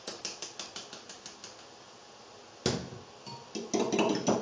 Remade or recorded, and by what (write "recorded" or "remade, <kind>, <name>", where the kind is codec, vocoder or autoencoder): recorded